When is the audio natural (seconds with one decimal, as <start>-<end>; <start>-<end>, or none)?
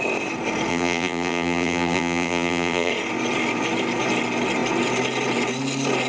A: 0.0-0.7; 2.9-6.1